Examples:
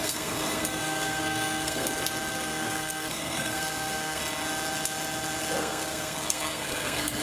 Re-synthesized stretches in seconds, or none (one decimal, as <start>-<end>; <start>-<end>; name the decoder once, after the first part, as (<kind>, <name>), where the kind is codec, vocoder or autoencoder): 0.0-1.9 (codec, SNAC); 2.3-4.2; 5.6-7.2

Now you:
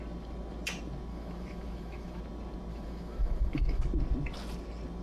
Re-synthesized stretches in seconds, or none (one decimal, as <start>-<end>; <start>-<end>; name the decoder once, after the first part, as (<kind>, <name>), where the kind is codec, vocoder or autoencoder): 1.1-2.2 (autoencoder, DAC-VAE); 2.7-3.8

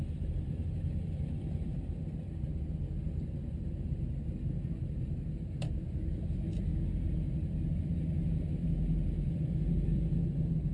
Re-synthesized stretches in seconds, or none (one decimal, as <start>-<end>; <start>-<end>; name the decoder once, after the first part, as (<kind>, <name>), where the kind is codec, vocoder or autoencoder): 0.0-6.7 (vocoder, BigVGAN v2); 9.3-10.7

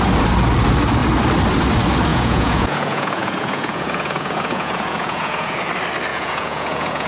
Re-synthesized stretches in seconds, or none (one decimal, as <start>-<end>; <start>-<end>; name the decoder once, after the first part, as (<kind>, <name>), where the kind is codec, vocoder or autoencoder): 2.1-5.6 (vocoder, Vocos); 6.1-7.1